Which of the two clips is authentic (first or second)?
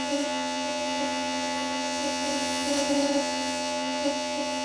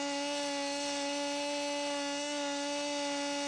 second